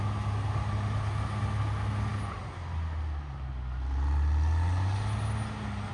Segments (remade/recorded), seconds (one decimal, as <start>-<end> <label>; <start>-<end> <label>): 0.0-5.9 recorded

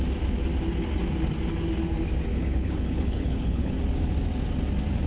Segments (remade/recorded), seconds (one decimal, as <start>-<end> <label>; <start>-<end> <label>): 0.0-2.3 recorded; 2.3-3.7 remade; 3.7-5.1 recorded

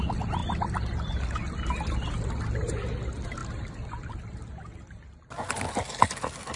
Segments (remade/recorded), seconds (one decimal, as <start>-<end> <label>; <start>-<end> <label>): 0.0-6.6 recorded

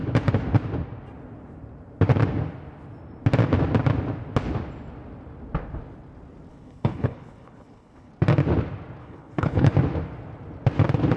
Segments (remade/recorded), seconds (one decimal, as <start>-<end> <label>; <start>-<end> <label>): 0.0-6.5 recorded; 6.5-8.1 remade; 8.1-9.0 recorded; 9.0-9.7 remade; 9.7-11.2 recorded

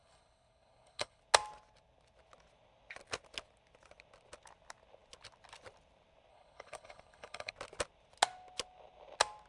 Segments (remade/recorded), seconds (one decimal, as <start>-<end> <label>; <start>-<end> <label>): 0.0-1.2 remade; 1.2-6.3 recorded; 6.3-7.5 remade; 7.5-9.5 recorded

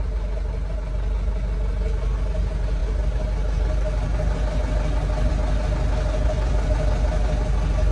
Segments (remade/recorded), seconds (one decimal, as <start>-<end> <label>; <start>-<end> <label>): 0.0-7.9 recorded

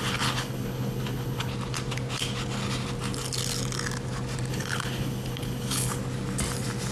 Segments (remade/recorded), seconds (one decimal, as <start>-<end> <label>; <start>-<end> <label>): 0.0-1.5 remade; 1.5-4.5 recorded; 4.5-6.0 remade; 6.0-6.9 recorded

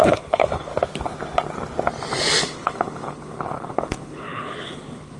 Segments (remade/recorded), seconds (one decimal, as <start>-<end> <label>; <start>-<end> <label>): 0.0-0.7 remade; 0.7-2.4 recorded; 2.4-5.2 remade